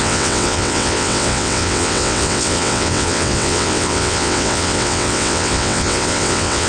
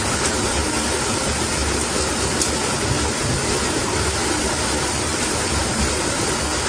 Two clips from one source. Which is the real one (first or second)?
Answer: second